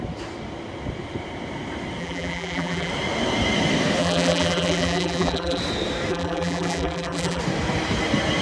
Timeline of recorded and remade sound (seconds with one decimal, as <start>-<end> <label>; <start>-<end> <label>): 0.0-2.0 recorded; 2.0-2.9 remade; 2.9-4.0 recorded; 4.0-5.6 remade; 5.6-6.1 recorded; 6.1-7.4 remade; 7.4-8.4 recorded